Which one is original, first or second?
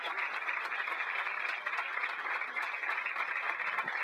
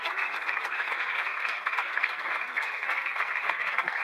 first